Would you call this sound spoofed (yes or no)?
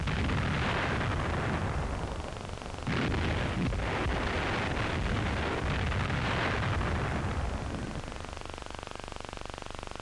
no